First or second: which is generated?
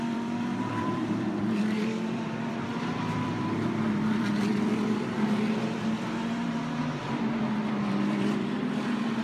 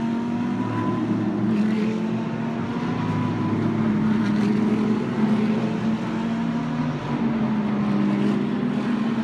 first